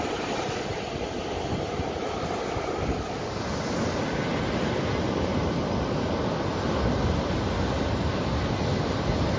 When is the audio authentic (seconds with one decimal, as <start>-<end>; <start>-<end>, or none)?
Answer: 0.0-9.4